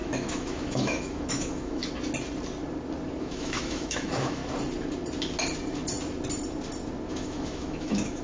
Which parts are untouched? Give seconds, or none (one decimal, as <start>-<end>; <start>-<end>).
1.8-3.2; 4.4-7.1